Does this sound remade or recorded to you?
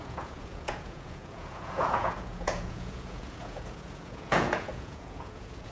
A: remade